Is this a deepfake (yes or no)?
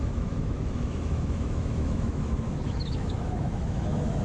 yes